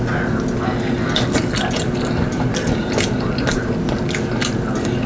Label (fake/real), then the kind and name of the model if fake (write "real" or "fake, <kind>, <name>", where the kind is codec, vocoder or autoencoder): real